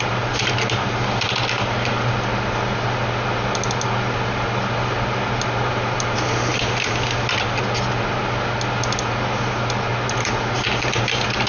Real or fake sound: real